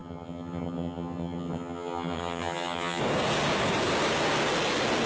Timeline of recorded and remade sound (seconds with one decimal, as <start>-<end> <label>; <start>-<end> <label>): 0.0-3.0 remade; 3.0-5.1 recorded